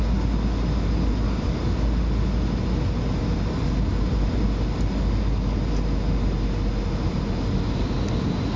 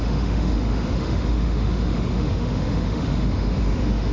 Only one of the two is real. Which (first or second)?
first